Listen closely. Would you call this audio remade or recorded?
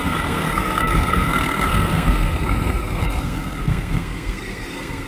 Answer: remade